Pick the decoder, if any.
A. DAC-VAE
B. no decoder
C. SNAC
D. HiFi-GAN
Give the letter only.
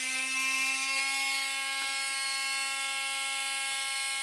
B